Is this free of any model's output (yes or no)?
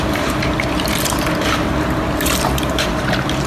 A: no